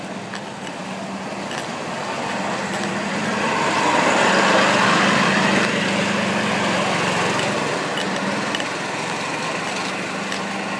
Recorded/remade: recorded